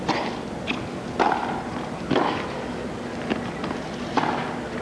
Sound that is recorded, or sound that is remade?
recorded